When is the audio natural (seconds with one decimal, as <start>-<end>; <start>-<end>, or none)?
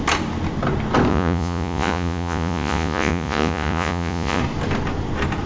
0.0-1.1; 4.4-5.5